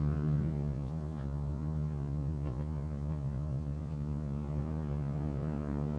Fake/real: fake